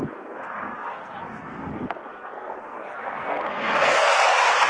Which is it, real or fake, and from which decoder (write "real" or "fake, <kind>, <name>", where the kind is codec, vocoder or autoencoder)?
fake, codec, SNAC